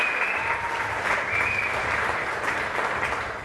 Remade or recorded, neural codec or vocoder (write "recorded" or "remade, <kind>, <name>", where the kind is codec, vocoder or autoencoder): recorded